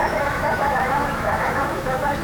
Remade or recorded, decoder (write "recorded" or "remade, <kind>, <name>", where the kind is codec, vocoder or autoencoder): remade, autoencoder, DAC-VAE